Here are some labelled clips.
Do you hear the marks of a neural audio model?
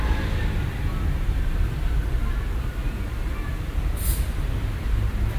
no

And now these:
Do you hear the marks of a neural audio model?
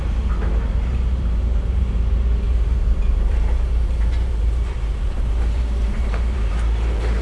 yes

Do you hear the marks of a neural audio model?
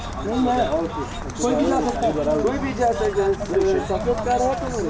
no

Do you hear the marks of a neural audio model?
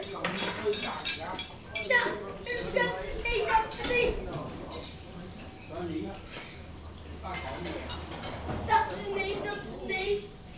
yes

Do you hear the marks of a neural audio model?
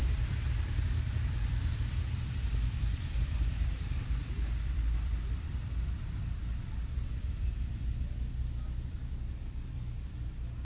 yes